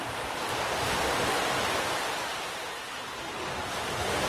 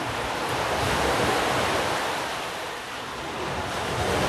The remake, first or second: first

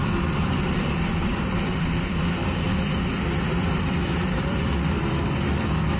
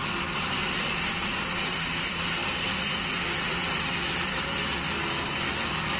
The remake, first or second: first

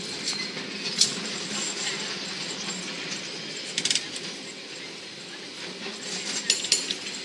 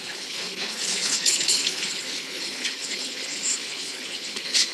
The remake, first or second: second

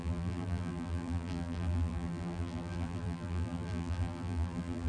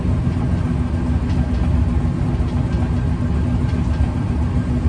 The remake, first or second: first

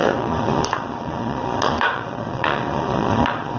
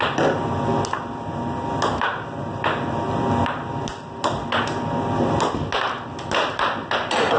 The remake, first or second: first